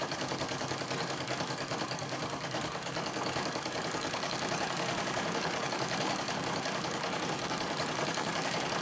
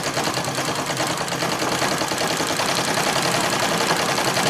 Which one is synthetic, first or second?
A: first